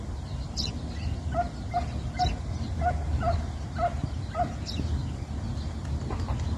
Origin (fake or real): real